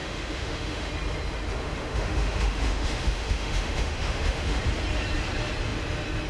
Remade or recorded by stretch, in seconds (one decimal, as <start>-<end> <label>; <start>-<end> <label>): 0.0-0.9 remade; 0.9-1.6 recorded; 1.6-4.6 remade; 4.6-6.3 recorded